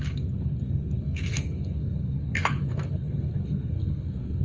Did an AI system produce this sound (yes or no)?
yes